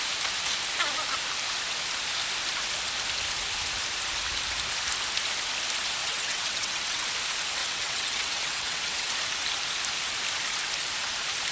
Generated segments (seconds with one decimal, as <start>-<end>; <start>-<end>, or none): 6.0-7.0; 7.6-9.1